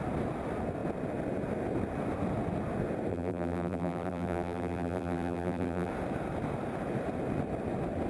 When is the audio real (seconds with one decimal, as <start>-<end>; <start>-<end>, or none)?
0.0-3.1; 5.9-8.1